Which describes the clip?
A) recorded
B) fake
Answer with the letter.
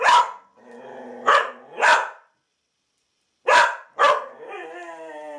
A